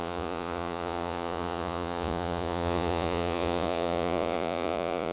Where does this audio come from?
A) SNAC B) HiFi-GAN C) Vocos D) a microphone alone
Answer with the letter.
C